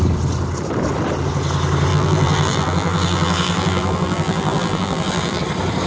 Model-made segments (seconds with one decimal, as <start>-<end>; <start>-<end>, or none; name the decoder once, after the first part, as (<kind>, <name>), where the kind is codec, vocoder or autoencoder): 1.9-5.4 (vocoder, BigVGAN v2)